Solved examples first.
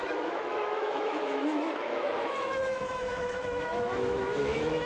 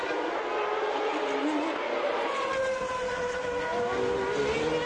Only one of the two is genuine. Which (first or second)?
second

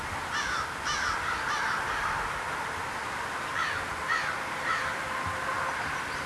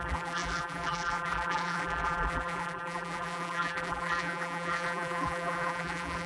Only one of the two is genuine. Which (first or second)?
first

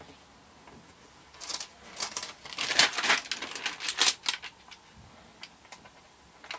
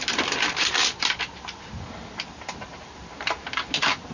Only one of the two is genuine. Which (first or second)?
first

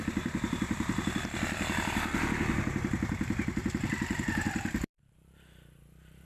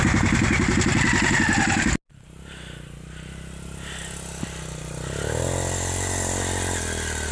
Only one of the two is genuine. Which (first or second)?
second